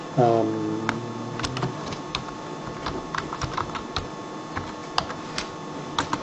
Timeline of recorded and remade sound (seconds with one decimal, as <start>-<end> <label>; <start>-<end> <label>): 0.0-6.2 recorded